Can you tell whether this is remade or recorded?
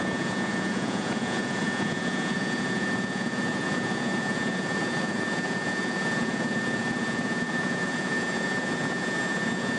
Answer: remade